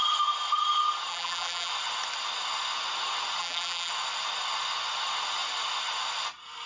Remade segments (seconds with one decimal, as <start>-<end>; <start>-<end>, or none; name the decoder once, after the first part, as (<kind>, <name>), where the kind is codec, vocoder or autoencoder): 1.1-1.7 (vocoder, BigVGAN v2); 3.4-3.9